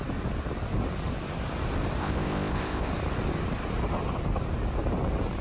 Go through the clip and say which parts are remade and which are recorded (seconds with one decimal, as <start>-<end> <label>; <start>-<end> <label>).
0.0-2.0 recorded; 2.0-2.9 remade; 2.9-5.4 recorded